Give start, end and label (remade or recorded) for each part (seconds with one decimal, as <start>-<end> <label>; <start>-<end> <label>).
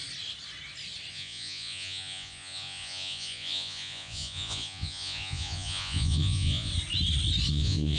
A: 0.0-1.1 recorded; 1.1-6.7 remade; 6.7-7.5 recorded; 7.5-8.0 remade